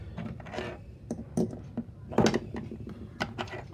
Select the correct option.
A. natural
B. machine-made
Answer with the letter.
A